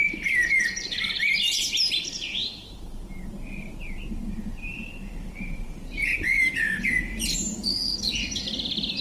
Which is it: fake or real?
fake